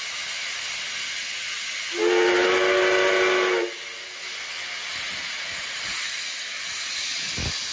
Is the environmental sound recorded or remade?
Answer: recorded